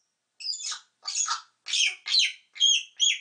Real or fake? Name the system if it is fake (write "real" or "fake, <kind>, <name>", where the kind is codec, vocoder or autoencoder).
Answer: real